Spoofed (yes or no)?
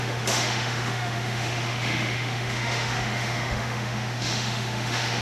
yes